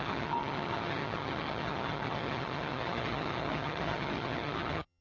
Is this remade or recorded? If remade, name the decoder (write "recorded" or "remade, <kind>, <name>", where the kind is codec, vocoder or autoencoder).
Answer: remade, vocoder, HiFi-GAN